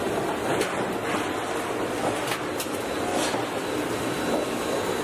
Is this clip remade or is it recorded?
recorded